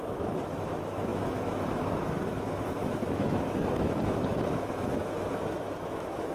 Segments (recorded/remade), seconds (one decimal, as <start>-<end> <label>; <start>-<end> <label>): 0.0-6.3 remade